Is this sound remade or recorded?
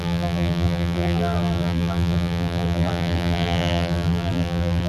remade